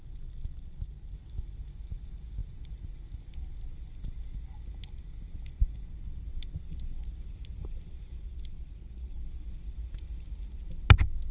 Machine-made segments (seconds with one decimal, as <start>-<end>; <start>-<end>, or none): none